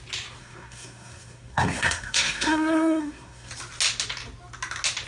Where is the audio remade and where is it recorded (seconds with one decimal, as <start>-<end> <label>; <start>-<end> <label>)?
0.0-0.4 recorded; 0.4-3.5 remade; 3.5-5.1 recorded